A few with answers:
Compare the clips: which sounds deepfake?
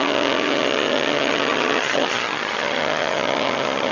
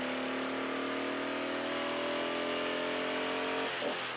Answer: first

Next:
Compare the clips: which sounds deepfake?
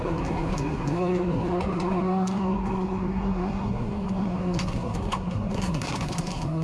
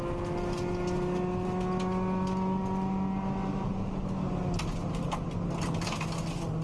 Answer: first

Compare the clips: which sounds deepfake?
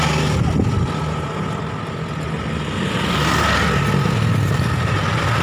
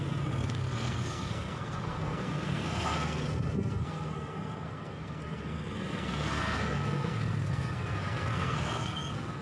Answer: second